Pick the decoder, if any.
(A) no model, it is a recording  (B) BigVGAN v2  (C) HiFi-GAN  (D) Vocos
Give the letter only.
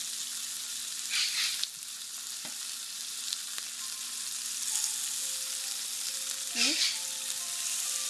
A